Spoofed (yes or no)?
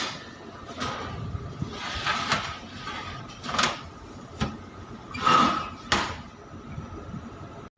no